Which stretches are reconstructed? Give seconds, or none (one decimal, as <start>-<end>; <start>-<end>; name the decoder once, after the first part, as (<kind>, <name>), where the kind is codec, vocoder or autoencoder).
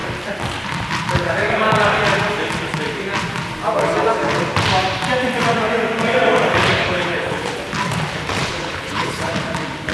6.8-7.5 (codec, HILCodec); 8.5-9.3